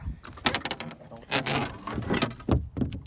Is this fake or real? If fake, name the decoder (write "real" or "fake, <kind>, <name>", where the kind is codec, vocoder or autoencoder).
real